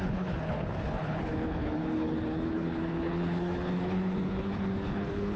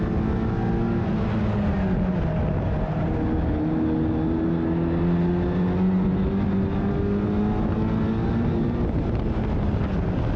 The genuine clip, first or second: second